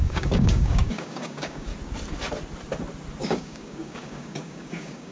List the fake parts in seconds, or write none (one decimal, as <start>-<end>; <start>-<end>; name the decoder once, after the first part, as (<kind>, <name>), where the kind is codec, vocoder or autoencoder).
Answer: 0.0-1.7 (codec, DAC); 3.2-5.1